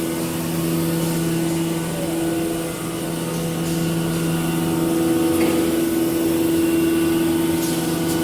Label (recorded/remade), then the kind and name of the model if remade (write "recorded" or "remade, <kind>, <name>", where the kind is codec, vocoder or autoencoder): recorded